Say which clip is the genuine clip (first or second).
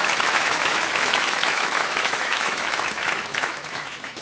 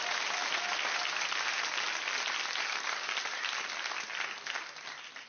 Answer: second